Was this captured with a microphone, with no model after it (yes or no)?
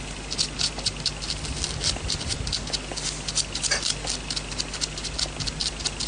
yes